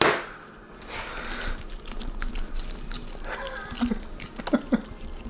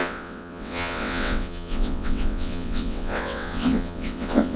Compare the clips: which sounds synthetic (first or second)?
second